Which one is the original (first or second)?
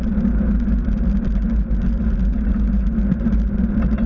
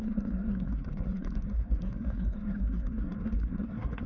first